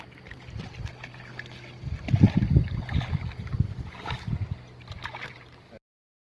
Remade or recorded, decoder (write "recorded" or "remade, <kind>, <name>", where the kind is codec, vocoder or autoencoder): recorded